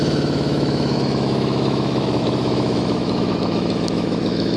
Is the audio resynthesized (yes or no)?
yes